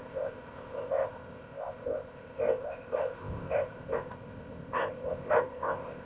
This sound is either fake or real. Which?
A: fake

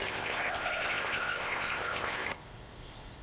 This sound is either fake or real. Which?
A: fake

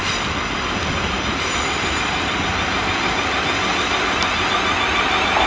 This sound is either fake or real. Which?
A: real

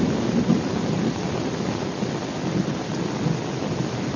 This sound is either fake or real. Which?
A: real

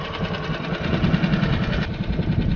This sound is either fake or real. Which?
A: real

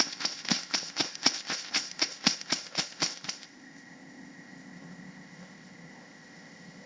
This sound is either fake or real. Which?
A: fake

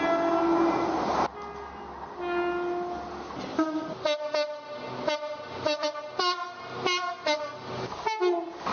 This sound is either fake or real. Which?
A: real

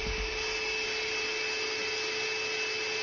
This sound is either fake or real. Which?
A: real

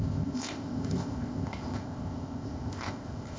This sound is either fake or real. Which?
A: fake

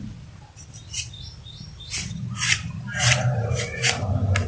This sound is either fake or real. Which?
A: real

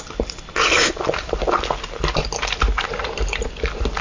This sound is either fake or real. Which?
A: real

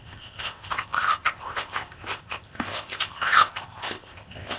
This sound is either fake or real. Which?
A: fake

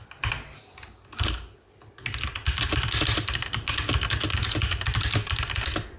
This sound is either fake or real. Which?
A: real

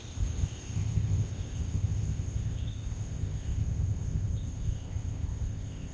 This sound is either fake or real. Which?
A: fake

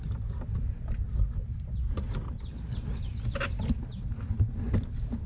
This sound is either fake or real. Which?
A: real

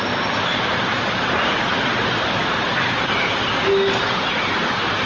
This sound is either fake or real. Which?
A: real